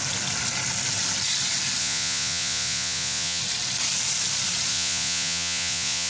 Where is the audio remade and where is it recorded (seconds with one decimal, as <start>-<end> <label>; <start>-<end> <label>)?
0.0-1.8 recorded; 1.8-3.4 remade; 3.4-4.7 recorded; 4.7-6.1 remade

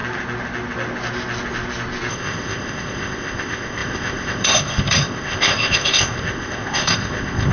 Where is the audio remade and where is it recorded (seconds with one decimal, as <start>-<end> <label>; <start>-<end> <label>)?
0.0-2.1 recorded; 2.1-7.5 remade

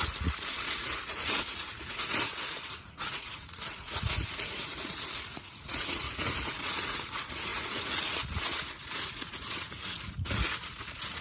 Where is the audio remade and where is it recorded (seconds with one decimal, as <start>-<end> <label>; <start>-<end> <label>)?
0.0-11.2 remade

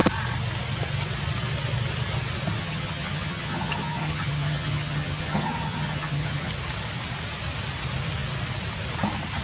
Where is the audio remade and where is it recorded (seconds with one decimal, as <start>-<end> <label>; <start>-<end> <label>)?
0.0-2.6 recorded; 2.6-6.5 remade; 6.5-9.4 recorded